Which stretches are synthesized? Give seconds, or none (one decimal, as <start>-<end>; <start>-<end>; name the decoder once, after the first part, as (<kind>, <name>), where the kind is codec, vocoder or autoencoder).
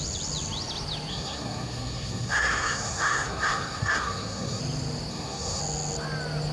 1.1-4.6 (codec, SNAC); 5.1-5.6